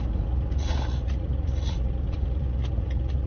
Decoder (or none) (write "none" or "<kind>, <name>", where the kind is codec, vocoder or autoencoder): vocoder, Vocos